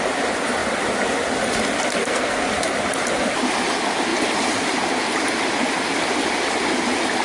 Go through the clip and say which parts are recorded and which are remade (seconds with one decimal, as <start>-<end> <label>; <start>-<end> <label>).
0.0-2.0 recorded; 2.0-2.5 remade; 2.5-7.2 recorded